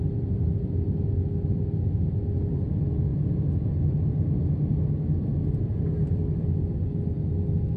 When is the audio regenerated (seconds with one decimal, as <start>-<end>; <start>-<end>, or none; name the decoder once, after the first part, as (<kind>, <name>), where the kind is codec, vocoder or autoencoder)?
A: 5.3-6.2 (vocoder, BigVGAN v2)